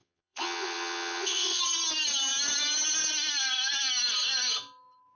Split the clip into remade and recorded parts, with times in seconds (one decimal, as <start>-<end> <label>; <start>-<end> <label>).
0.0-1.6 remade; 1.6-5.2 recorded